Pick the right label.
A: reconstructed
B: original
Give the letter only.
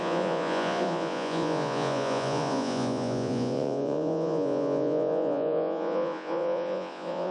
A